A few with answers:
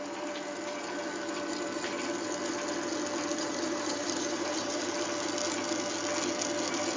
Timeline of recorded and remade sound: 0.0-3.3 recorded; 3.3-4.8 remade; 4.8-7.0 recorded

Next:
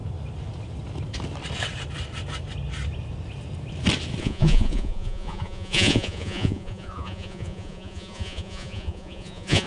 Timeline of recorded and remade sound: 0.0-4.2 recorded; 4.2-9.7 remade

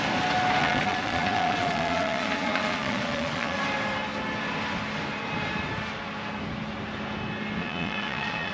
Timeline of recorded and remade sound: 0.0-0.6 recorded; 0.6-3.6 remade; 3.6-7.6 recorded; 7.6-8.5 remade

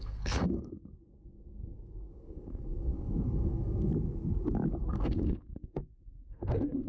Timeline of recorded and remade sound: 0.0-3.9 remade; 3.9-4.9 recorded; 4.9-6.9 remade

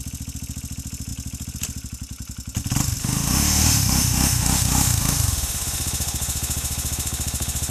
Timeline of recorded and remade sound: 0.0-3.0 recorded; 3.0-7.7 remade

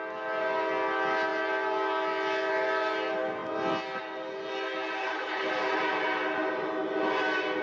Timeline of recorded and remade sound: 0.0-5.0 recorded; 5.0-5.5 remade; 5.5-7.6 recorded

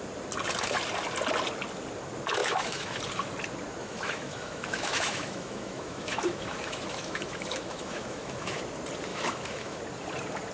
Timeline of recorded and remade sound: 0.0-2.4 recorded; 2.4-3.0 remade; 3.0-3.8 recorded; 3.8-8.6 remade; 8.6-9.1 recorded; 9.1-9.8 remade; 9.8-10.5 recorded